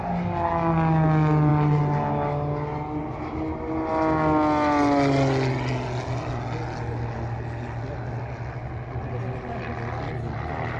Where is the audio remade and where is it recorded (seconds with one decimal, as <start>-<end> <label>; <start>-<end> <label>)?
0.0-10.8 recorded